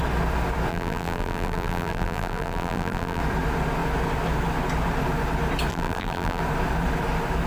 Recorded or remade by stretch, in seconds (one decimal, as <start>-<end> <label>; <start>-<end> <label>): 0.0-0.7 recorded; 0.7-3.2 remade; 3.2-5.7 recorded; 5.7-6.4 remade; 6.4-7.5 recorded